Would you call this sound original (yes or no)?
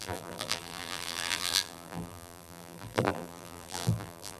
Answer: no